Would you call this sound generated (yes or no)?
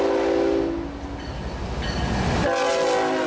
no